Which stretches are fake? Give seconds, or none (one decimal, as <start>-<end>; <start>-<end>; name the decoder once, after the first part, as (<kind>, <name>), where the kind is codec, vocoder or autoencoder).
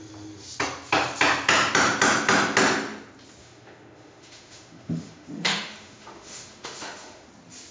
3.4-7.3 (autoencoder, DAC-VAE)